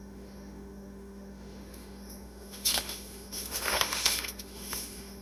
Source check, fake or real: fake